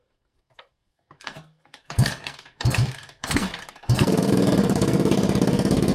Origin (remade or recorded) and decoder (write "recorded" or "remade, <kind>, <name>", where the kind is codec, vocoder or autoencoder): remade, codec, SNAC